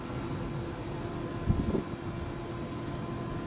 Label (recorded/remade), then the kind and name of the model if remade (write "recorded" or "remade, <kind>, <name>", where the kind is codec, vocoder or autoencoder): recorded